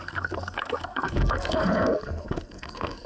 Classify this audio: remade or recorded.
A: remade